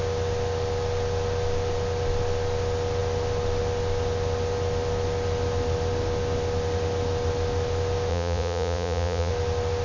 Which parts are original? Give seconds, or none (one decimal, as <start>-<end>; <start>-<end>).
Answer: 0.0-8.1; 9.3-9.8